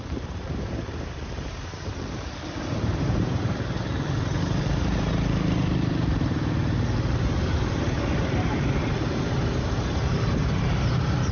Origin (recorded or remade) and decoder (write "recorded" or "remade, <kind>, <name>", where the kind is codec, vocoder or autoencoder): remade, vocoder, BigVGAN v2